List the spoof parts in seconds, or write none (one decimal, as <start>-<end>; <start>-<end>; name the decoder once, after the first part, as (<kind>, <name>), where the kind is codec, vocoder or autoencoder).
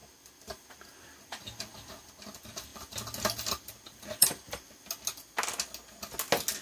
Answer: 2.7-4.9 (vocoder, BigVGAN v2)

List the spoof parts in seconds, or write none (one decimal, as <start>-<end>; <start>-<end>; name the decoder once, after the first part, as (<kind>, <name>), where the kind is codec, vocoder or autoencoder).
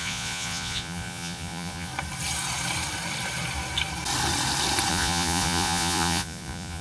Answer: 0.0-1.9 (vocoder, Vocos); 4.9-6.8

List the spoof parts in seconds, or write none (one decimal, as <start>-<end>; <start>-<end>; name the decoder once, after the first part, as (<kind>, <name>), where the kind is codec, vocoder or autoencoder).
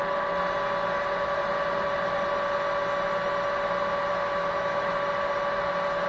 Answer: 4.1-4.9 (autoencoder, DAC-VAE)